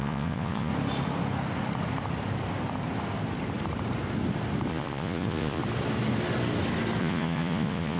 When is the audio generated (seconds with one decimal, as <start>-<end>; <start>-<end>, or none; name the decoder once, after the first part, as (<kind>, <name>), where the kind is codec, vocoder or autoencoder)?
0.0-0.7 (vocoder, Vocos); 4.7-5.6; 7.0-8.0